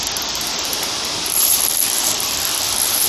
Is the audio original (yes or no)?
no